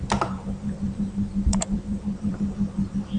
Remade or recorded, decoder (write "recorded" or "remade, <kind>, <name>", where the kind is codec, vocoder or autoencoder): remade, vocoder, BigVGAN v2